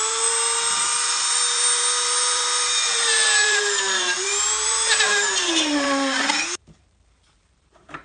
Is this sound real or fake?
fake